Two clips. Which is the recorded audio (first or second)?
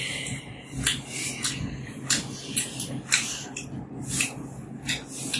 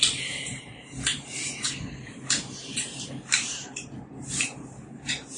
first